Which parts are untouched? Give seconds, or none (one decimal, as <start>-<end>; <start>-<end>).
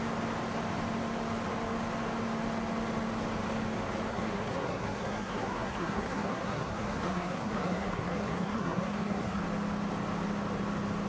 0.0-4.1; 9.4-11.1